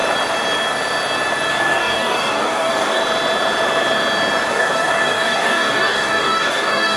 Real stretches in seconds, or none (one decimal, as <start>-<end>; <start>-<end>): 0.0-1.5; 3.0-4.5